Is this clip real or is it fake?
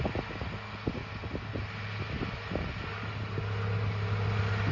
real